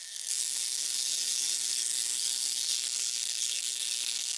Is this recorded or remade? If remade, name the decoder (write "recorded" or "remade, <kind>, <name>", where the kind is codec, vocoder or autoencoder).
remade, codec, DAC